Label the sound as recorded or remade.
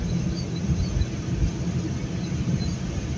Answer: recorded